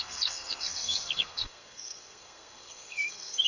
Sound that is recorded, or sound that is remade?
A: remade